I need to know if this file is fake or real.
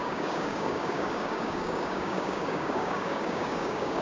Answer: fake